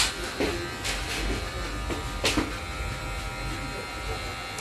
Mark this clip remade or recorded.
recorded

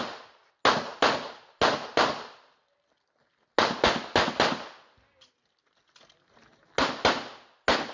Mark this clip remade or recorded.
recorded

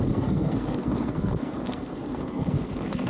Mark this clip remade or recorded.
remade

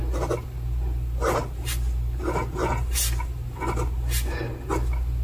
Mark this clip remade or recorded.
recorded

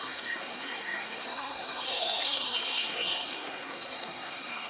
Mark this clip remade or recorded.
remade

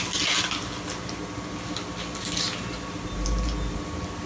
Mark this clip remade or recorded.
recorded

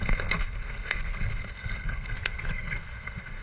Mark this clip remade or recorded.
remade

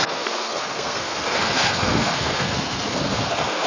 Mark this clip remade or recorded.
remade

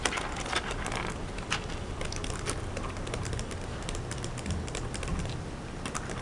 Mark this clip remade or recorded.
recorded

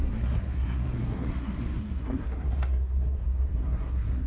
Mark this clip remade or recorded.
remade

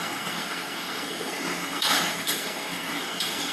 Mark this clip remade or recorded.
remade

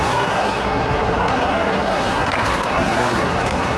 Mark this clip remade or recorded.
remade